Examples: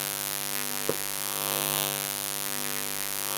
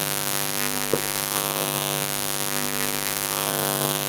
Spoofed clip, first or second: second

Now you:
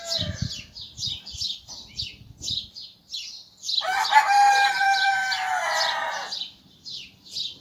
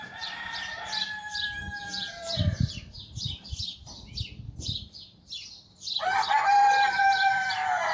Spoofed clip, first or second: second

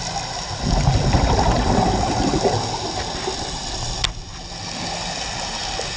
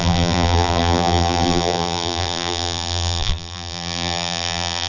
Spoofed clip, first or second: second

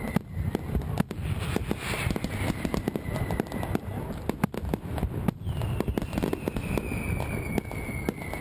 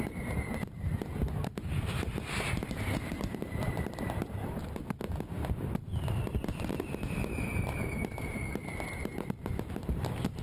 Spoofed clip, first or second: second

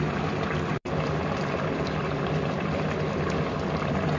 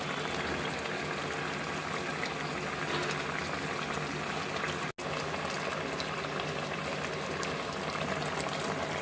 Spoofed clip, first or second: first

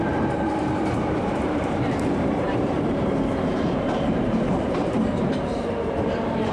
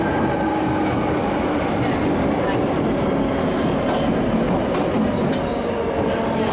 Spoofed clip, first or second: first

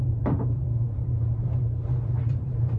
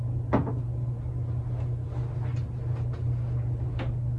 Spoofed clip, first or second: first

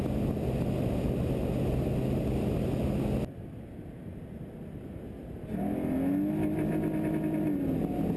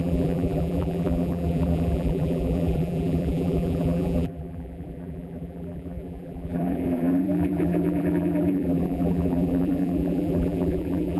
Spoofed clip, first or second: second